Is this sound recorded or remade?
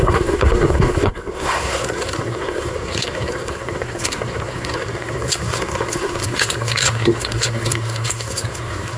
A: remade